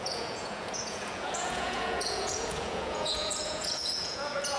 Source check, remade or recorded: remade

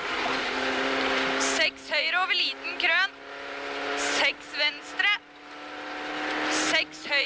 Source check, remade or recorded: recorded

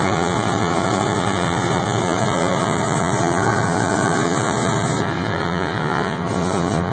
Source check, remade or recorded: remade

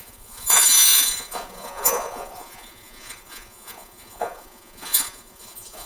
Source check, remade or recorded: remade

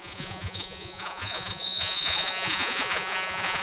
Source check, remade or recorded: remade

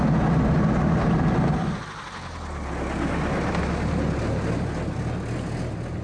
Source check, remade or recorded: recorded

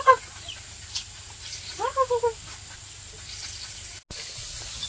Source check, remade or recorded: recorded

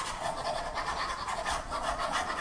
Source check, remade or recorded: remade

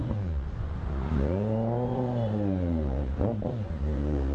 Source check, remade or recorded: remade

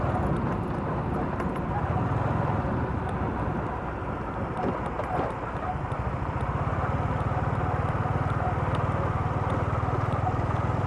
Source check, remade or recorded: recorded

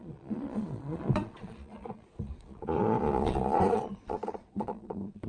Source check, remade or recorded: remade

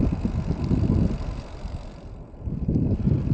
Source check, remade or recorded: recorded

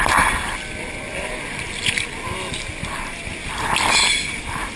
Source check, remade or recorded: recorded